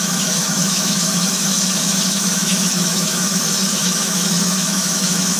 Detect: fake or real fake